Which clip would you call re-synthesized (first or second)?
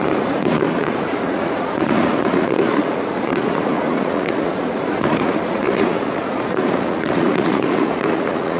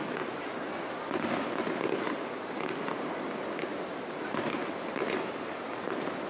first